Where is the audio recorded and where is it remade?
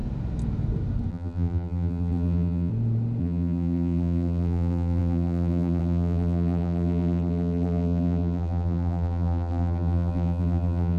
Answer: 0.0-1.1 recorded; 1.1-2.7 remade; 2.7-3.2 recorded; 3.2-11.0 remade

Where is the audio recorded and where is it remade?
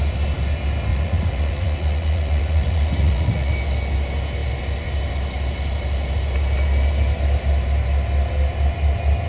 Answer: 0.0-0.9 recorded; 0.9-3.5 remade; 3.5-9.3 recorded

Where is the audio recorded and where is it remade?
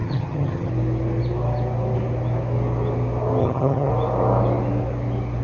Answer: 0.0-0.7 remade; 0.7-3.4 recorded; 3.4-3.9 remade; 3.9-5.4 recorded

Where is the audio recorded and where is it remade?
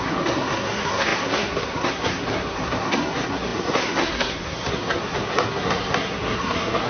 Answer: 0.0-6.9 remade